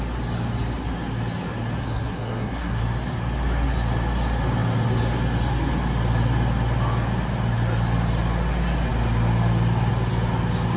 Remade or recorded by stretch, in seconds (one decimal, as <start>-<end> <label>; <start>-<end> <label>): 0.0-1.8 recorded; 1.8-2.8 remade; 2.8-10.8 recorded